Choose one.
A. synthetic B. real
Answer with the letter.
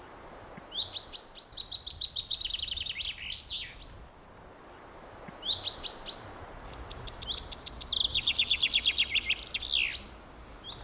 B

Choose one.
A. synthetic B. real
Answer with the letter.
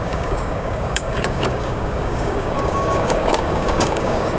A